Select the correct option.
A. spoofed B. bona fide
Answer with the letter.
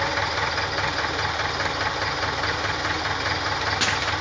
B